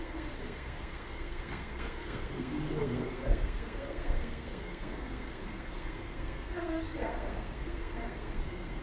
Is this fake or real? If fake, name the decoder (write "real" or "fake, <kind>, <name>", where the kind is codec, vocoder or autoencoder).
fake, codec, SNAC